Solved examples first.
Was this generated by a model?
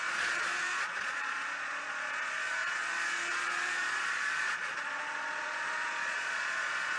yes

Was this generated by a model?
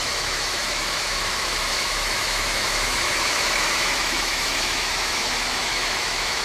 yes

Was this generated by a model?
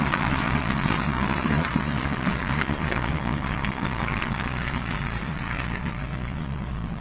yes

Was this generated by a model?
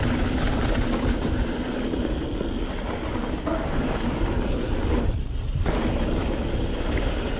no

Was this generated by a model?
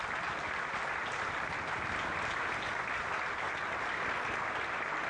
no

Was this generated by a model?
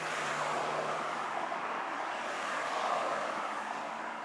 yes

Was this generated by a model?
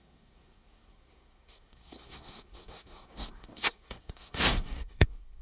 yes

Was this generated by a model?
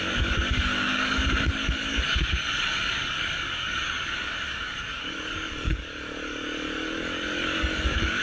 yes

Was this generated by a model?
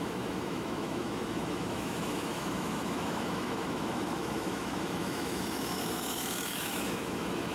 yes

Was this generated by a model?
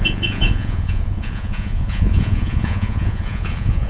yes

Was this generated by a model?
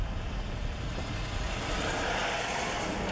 no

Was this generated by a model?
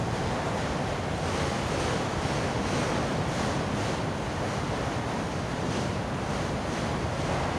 no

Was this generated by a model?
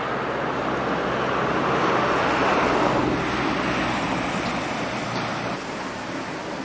no